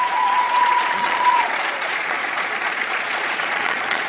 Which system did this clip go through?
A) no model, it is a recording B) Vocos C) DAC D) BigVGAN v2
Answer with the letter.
B